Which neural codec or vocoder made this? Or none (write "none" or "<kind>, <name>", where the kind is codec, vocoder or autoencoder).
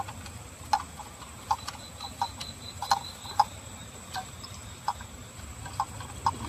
none